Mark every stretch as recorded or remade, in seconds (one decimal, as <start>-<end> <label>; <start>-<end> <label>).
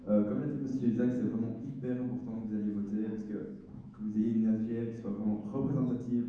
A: 0.0-6.3 remade